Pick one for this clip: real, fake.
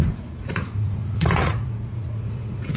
fake